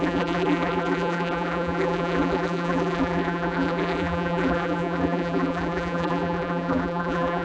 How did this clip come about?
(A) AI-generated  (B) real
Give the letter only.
A